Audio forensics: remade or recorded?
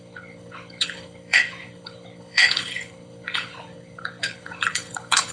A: remade